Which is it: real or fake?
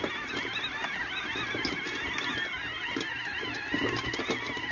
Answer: real